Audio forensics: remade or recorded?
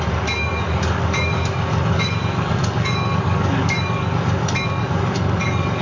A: remade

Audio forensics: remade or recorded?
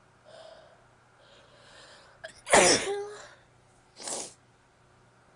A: recorded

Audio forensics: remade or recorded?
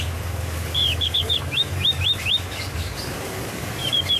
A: remade